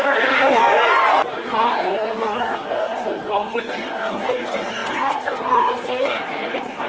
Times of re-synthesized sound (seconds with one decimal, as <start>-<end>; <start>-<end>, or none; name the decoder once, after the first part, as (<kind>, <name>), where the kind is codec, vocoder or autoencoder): 0.0-0.6 (codec, SNAC); 1.3-6.9